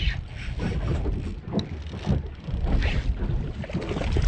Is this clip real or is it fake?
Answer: real